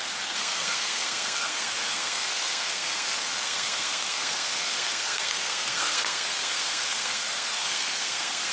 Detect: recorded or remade remade